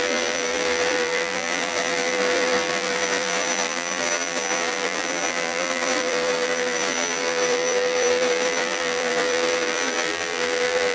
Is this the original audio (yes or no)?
no